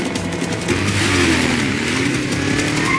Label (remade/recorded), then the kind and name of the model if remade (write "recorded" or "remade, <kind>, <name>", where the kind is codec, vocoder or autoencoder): recorded